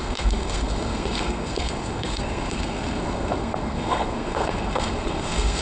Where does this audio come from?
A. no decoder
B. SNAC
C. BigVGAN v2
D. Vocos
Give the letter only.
B